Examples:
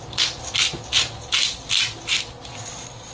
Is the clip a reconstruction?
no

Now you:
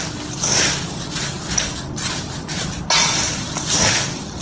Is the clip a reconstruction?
no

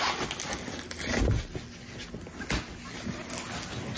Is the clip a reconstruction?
no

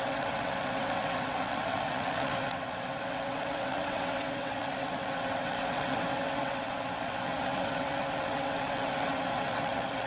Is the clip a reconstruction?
yes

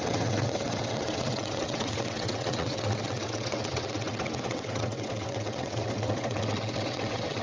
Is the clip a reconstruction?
yes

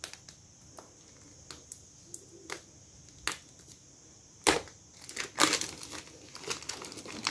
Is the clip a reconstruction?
no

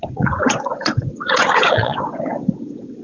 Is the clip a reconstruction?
yes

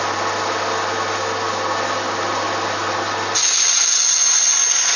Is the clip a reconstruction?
no